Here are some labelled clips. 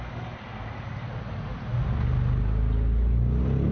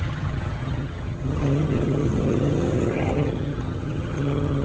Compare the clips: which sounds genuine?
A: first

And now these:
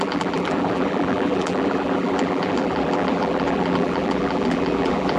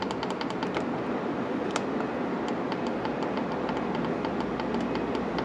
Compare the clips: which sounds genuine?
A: second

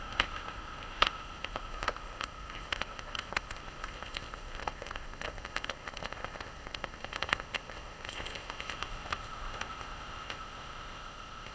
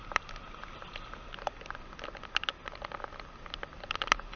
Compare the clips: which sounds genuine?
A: second